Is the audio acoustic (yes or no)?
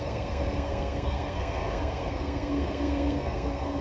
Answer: no